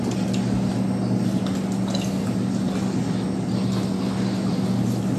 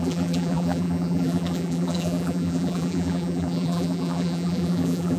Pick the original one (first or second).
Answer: first